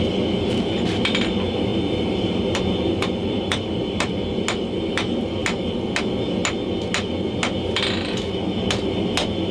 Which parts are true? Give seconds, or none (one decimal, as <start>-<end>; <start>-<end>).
0.0-3.2; 4.4-9.5